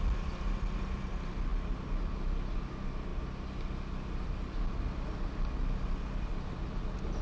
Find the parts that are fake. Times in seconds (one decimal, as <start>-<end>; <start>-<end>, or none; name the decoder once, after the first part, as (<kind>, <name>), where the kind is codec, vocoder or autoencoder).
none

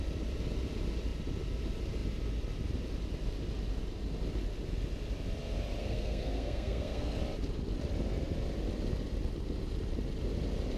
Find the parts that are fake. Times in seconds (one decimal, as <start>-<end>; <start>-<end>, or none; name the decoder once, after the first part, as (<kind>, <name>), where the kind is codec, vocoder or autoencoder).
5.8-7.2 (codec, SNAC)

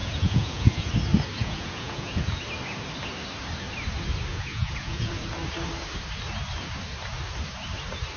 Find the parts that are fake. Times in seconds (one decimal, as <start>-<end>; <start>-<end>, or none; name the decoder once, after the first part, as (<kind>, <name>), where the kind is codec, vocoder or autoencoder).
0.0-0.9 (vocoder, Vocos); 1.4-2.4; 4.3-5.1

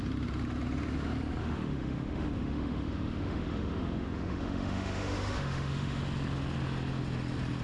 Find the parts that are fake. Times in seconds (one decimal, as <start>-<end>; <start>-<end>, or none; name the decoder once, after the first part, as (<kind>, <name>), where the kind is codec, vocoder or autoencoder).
1.4-6.0 (autoencoder, DAC-VAE)